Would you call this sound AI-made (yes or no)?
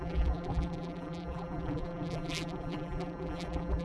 yes